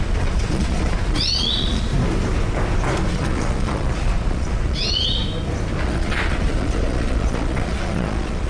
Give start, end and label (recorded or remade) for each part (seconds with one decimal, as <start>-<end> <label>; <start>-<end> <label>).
0.0-1.9 remade; 1.9-3.1 recorded; 3.1-5.2 remade; 5.2-5.8 recorded; 5.8-8.5 remade